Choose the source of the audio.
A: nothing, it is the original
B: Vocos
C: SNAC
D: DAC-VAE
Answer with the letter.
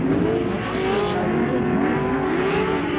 A